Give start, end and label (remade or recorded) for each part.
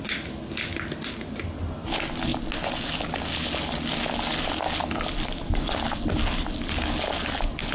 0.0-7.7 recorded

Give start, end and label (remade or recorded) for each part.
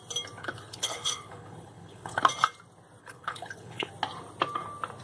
0.0-0.4 recorded; 0.4-2.2 remade; 2.2-3.0 recorded; 3.0-3.9 remade; 3.9-5.0 recorded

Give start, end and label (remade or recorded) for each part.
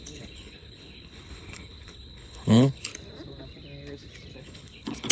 0.0-2.9 remade; 2.9-4.4 recorded; 4.4-5.1 remade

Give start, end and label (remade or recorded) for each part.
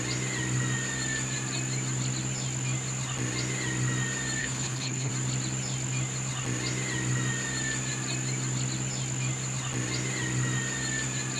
0.0-4.4 recorded; 4.4-5.1 remade; 5.1-11.4 recorded